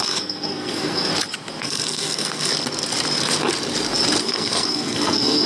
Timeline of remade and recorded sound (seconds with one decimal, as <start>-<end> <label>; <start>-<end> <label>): 0.0-1.1 remade; 1.1-1.6 recorded; 1.6-2.5 remade; 2.5-4.2 recorded; 4.2-5.5 remade